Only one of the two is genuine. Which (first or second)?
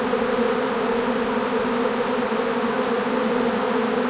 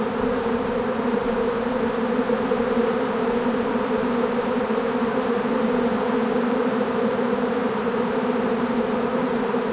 first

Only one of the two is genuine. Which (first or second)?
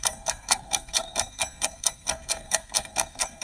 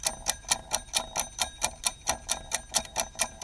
second